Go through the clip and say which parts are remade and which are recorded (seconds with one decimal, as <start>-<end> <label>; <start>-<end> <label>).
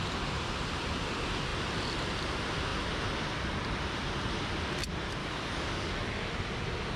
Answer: 0.0-5.2 recorded; 5.2-6.3 remade; 6.3-7.0 recorded